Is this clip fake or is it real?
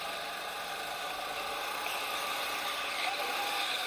real